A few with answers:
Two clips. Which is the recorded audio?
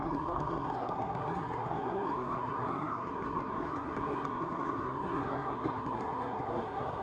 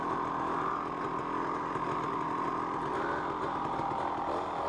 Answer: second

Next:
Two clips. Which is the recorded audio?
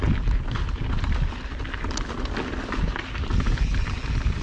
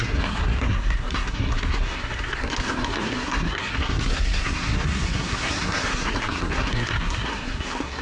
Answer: first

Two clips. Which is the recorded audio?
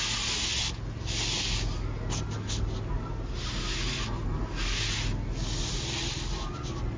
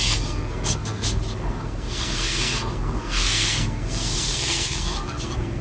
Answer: first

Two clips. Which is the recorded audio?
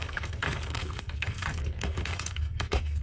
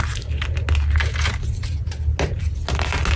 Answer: second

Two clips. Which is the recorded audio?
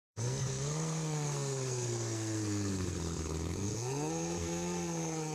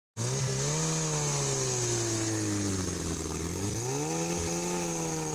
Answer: second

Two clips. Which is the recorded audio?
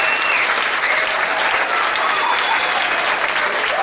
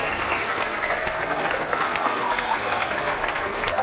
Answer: first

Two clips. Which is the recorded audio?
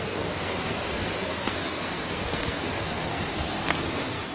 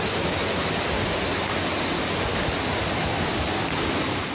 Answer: second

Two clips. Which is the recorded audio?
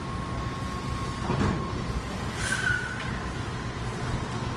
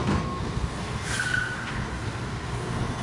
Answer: first